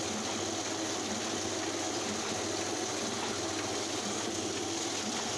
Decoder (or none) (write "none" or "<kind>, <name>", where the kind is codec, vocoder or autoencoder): none